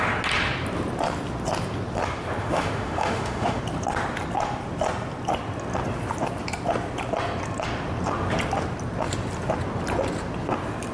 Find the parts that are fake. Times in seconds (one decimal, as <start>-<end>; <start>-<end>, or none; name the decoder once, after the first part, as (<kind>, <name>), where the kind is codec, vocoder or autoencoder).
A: 2.4-3.6 (autoencoder, DAC-VAE)